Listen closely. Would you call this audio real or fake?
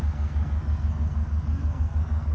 fake